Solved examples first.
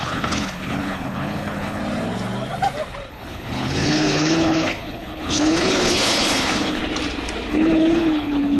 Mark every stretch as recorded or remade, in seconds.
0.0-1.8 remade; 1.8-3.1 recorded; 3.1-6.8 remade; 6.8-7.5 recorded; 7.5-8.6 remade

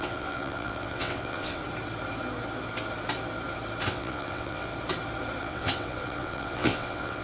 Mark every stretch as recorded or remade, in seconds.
0.0-1.6 remade; 1.6-3.9 recorded; 3.9-4.7 remade; 4.7-5.4 recorded; 5.4-7.2 remade

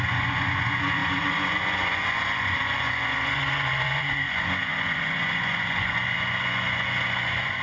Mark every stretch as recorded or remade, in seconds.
0.0-7.6 remade

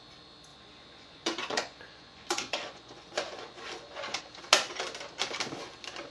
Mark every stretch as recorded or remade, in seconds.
0.0-0.5 recorded; 0.5-4.2 remade; 4.2-6.1 recorded

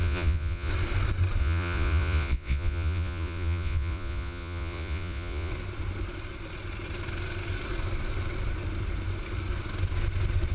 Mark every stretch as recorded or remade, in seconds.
0.0-0.7 remade; 0.7-1.4 recorded; 1.4-5.5 remade; 5.5-10.5 recorded

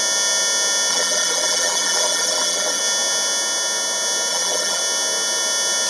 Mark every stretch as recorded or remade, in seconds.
0.0-0.9 recorded; 0.9-2.8 remade; 2.8-4.3 recorded; 4.3-4.8 remade; 4.8-5.9 recorded